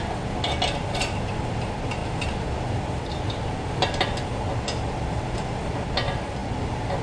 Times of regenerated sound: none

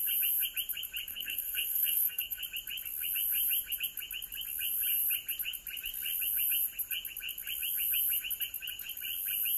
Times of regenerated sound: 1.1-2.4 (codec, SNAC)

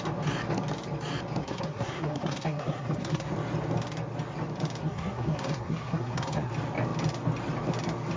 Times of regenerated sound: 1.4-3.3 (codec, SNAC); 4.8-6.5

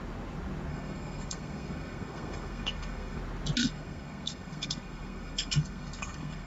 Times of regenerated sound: 0.7-3.2 (codec, SNAC); 3.6-6.5

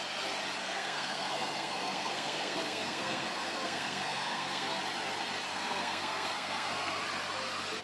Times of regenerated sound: 0.6-4.8 (codec, SNAC); 5.5-7.0

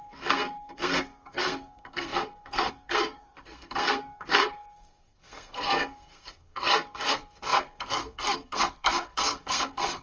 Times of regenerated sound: 0.0-10.0 (codec, SNAC)

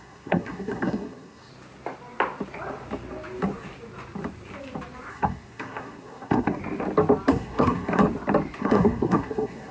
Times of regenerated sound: 0.0-1.5 (codec, SNAC); 5.1-6.6; 7.3-8.0; 8.6-9.7

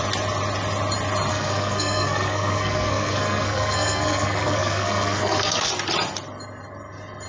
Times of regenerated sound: 1.3-5.7 (codec, SNAC)